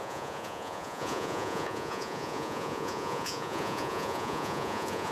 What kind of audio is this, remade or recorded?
remade